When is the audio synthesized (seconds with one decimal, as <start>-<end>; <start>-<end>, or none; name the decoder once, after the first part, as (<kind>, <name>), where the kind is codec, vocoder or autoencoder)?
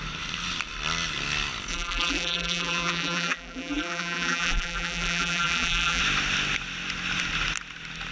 1.7-6.0 (vocoder, BigVGAN v2)